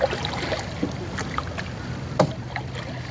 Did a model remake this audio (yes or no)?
no